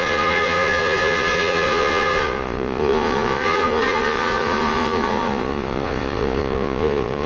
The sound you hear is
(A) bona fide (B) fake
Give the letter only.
B